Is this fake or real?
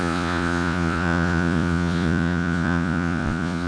fake